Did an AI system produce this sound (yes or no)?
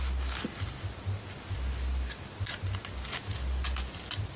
no